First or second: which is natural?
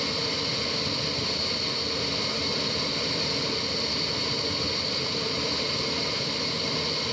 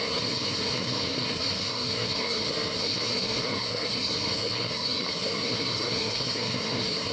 first